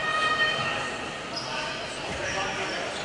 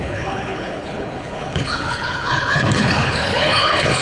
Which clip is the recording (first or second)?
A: first